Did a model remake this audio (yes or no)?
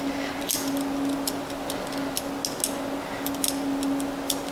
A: no